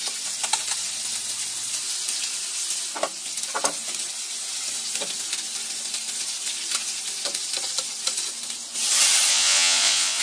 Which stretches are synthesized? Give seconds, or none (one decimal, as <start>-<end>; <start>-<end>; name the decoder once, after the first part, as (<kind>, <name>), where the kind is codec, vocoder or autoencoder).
9.3-10.2 (vocoder, Vocos)